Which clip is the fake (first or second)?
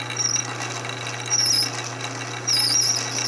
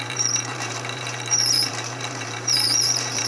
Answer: second